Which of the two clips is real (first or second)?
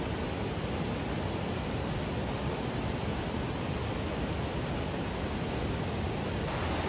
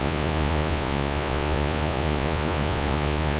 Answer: first